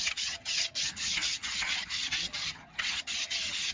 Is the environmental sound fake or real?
fake